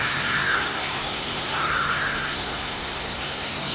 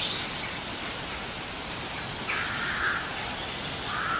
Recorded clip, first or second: second